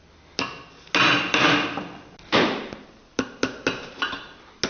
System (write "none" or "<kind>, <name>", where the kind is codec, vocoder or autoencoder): none